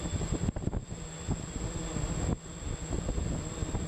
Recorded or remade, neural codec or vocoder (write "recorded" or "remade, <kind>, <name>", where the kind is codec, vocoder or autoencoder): recorded